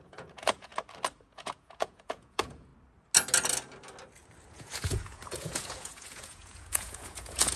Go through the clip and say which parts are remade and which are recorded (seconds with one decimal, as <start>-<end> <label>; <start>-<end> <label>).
0.0-0.7 remade; 0.7-1.2 recorded; 1.2-2.7 remade; 2.7-4.5 recorded; 4.5-7.6 remade